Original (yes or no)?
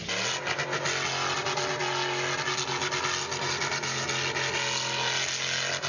yes